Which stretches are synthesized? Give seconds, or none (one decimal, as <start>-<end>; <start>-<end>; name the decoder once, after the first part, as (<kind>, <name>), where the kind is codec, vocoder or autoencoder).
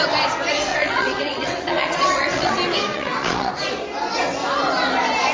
0.7-2.5 (vocoder, WaveNeXt); 2.9-3.5